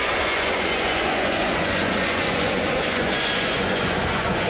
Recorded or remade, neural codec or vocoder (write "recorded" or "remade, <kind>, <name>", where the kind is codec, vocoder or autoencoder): remade, vocoder, Vocos